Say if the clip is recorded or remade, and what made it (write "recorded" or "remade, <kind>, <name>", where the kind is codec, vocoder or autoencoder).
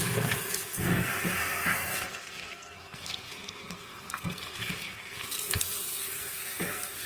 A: remade, codec, SNAC